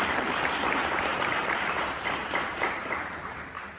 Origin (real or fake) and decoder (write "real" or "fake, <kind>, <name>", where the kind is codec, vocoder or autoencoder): fake, vocoder, BigVGAN v2